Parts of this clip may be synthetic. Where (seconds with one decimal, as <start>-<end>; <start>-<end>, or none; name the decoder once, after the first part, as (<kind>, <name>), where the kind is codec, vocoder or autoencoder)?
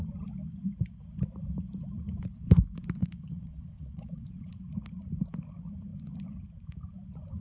3.0-4.7 (vocoder, WaveNeXt)